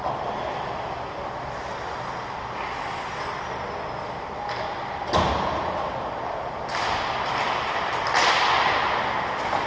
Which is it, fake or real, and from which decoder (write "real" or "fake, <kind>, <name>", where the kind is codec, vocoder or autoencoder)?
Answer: real